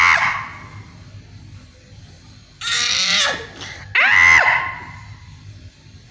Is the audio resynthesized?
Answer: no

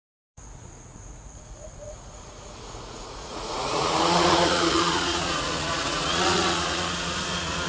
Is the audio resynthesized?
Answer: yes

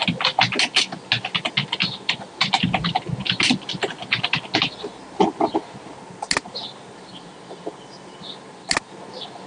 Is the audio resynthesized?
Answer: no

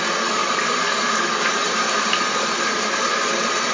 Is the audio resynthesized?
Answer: yes